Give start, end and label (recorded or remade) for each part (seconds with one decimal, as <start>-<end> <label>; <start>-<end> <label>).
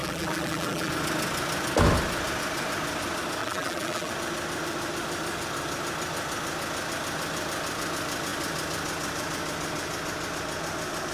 0.0-0.9 remade; 0.9-3.4 recorded; 3.4-4.1 remade; 4.1-11.1 recorded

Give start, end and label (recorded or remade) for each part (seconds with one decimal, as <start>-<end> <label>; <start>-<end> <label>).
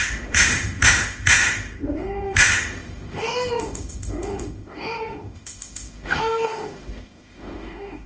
0.0-8.1 remade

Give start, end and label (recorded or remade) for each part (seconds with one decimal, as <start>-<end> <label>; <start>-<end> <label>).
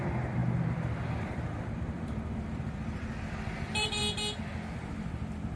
0.0-4.0 remade; 4.0-4.7 recorded; 4.7-5.6 remade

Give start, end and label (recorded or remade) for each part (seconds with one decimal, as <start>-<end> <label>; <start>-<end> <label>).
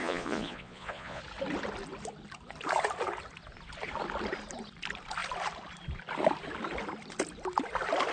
0.0-1.2 remade; 1.2-8.1 recorded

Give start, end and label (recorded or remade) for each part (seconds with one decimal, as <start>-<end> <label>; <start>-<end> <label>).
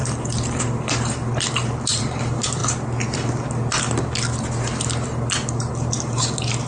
0.0-2.6 remade; 2.6-5.7 recorded; 5.7-6.7 remade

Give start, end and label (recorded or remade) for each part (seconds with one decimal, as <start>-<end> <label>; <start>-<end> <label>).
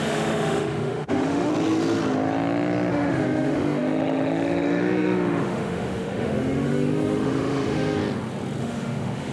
0.0-1.5 remade; 1.5-2.9 recorded; 2.9-8.0 remade; 8.0-8.6 recorded; 8.6-9.3 remade